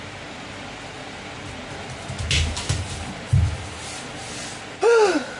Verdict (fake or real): real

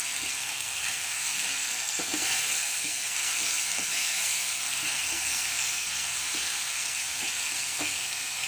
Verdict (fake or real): fake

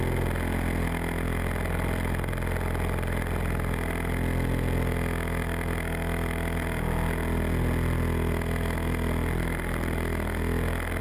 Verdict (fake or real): real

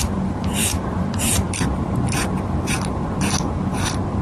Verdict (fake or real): fake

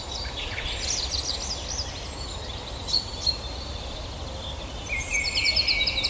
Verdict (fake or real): real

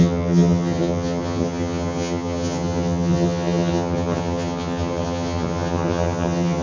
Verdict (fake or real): fake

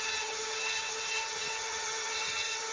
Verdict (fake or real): fake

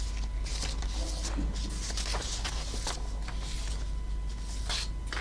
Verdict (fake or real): real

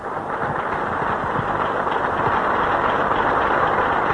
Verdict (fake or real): real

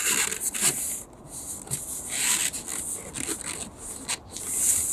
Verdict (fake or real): real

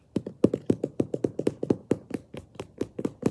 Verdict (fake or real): real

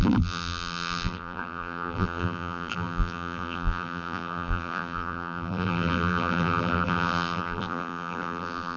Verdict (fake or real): fake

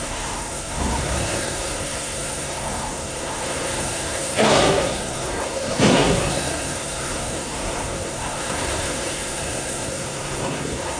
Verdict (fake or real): fake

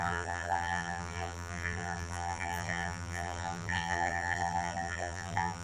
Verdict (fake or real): fake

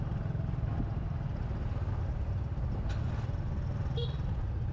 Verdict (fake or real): real